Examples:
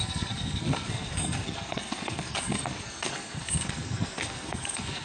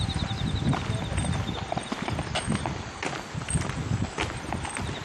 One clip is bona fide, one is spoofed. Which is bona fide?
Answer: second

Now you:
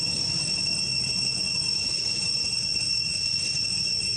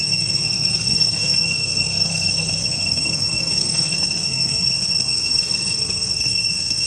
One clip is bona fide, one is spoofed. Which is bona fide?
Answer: first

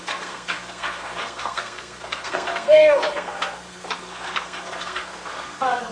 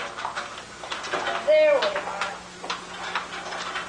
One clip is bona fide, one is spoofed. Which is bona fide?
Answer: second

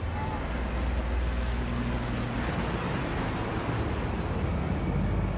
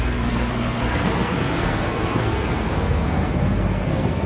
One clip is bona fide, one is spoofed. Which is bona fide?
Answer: first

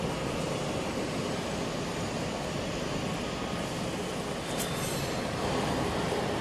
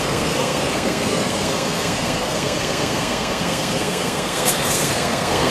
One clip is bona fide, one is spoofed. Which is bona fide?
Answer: first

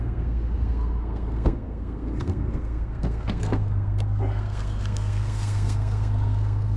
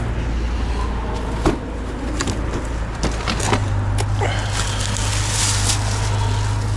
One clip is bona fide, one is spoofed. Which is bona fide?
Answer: second